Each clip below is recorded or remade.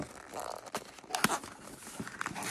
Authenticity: recorded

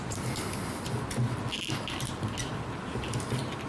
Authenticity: recorded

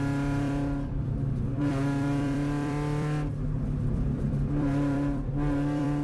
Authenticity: remade